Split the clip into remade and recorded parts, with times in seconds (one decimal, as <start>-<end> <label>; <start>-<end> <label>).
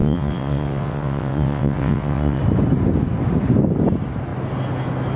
0.0-2.4 remade; 2.4-5.2 recorded